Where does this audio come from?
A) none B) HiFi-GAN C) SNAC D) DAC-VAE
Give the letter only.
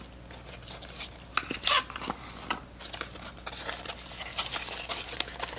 A